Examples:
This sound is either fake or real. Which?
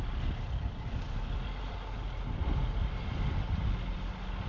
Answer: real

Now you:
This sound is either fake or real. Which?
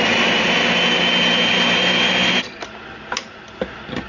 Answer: real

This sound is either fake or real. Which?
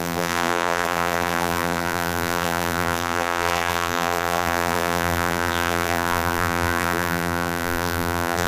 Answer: fake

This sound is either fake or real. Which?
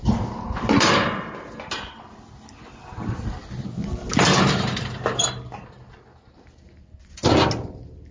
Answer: real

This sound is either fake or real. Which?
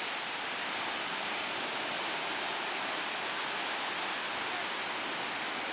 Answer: fake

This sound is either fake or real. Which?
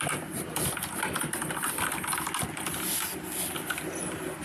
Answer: real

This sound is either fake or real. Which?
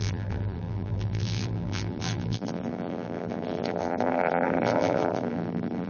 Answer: fake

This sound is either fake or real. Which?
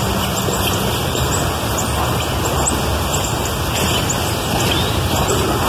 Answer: real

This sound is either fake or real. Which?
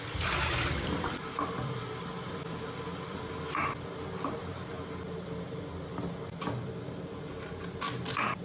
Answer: fake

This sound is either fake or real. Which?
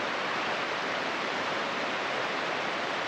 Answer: fake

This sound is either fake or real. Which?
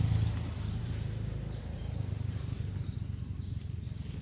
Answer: fake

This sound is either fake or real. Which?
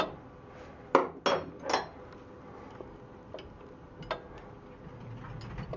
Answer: real